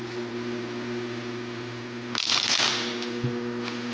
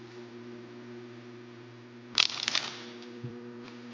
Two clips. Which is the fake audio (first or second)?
second